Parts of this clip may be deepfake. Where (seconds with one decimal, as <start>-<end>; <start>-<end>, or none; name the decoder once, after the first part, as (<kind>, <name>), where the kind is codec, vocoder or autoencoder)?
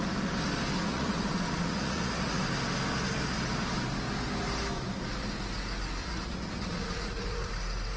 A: 0.9-2.4 (vocoder, Vocos); 6.0-7.5